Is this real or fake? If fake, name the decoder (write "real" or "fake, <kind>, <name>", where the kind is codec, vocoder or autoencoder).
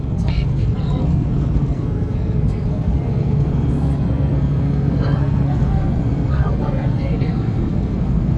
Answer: fake, codec, SNAC